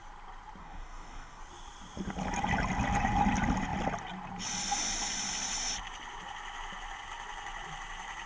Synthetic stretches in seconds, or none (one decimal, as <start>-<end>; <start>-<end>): 0.6-1.4